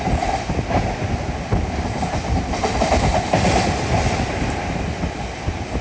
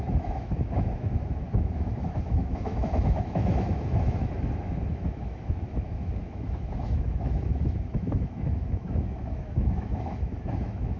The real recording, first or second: first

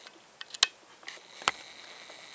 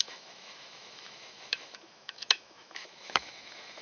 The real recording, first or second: first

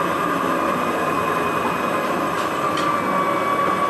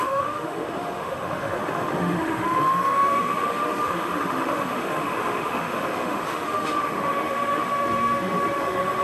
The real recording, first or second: first